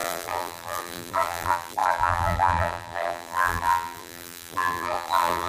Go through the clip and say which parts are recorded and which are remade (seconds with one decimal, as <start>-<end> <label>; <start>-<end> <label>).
0.0-5.5 remade